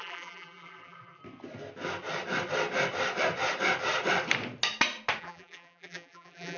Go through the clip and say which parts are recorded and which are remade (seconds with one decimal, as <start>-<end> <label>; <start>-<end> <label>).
0.0-1.2 remade; 1.2-5.2 recorded; 5.2-6.6 remade